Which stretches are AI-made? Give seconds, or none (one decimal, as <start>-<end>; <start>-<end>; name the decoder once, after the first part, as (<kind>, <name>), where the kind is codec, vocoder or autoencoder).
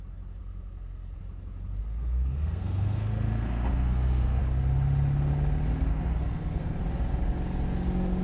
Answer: 0.4-1.2 (codec, SNAC); 1.8-4.4; 5.9-6.8